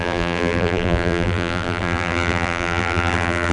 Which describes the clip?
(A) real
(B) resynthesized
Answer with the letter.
B